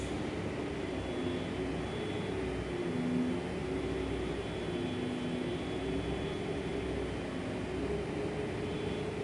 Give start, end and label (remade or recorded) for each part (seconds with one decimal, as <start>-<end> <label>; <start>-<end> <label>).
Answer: 0.0-9.2 recorded